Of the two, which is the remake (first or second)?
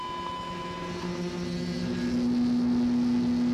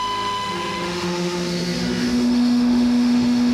second